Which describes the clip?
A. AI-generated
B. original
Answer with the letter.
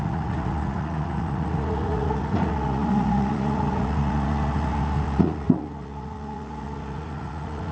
A